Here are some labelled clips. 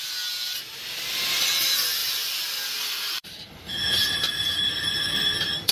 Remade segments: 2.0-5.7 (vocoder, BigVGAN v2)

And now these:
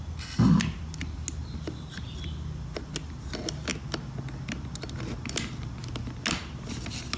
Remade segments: none

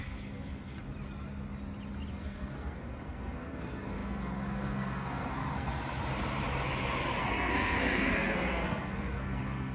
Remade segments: 0.0-0.8 (codec, SNAC); 2.1-5.8; 7.2-9.7

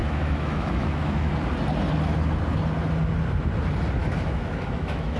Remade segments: 0.0-1.3 (autoencoder, DAC-VAE); 4.0-5.2